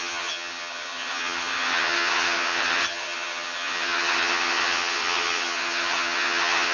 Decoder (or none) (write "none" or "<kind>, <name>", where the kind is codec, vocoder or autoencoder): vocoder, HiFi-GAN